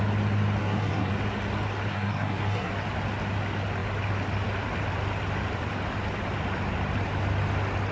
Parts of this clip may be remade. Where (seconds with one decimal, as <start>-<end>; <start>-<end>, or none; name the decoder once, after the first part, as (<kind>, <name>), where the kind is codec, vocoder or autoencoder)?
0.6-1.1 (codec, SNAC); 1.9-2.7